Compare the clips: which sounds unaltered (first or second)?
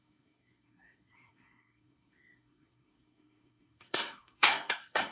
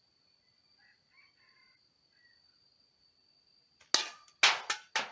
second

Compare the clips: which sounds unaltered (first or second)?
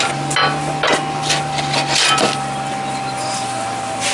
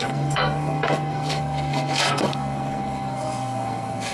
first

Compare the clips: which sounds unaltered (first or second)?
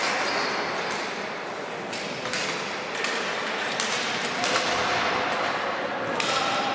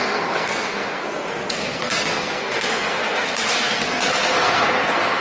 first